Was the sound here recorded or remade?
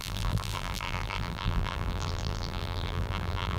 remade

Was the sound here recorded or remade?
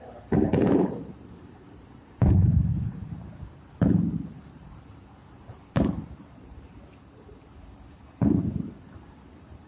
remade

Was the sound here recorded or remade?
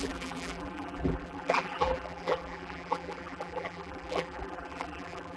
remade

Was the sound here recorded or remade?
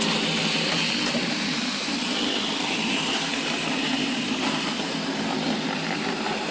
remade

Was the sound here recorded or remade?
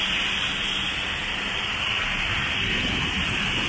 remade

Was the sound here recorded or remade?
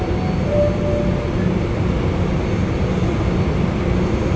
recorded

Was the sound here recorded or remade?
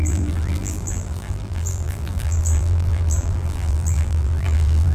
remade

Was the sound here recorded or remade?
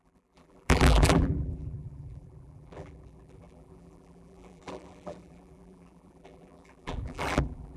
remade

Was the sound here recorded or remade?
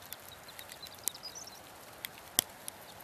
recorded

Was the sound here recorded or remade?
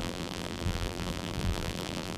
remade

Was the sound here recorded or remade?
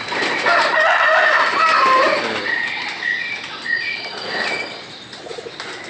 remade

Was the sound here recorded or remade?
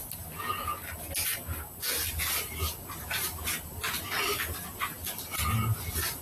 recorded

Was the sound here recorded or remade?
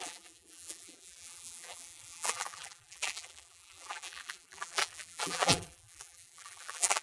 remade